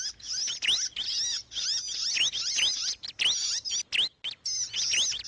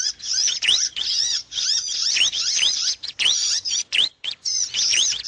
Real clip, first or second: first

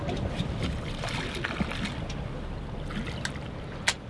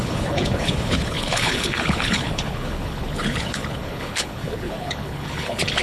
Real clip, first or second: first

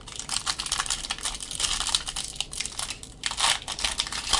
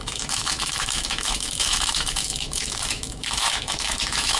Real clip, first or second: first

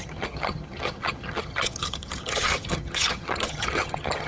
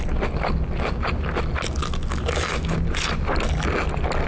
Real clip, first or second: second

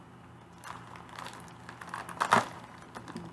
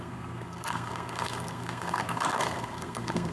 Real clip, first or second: first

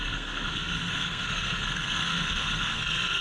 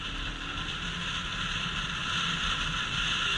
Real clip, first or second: second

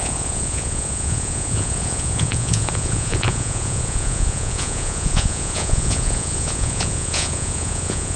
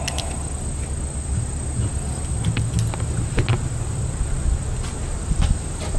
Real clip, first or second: second